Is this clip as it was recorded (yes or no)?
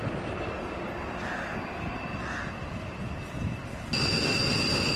yes